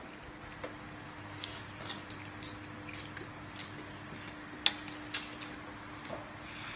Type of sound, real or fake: real